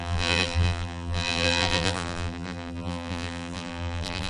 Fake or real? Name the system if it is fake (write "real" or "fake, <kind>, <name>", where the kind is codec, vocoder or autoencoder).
fake, vocoder, BigVGAN v2